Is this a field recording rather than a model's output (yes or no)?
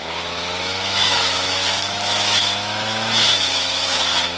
no